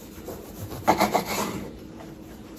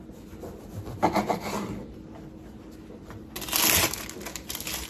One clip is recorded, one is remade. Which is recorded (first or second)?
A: second